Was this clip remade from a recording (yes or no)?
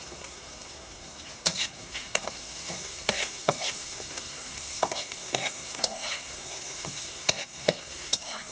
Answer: yes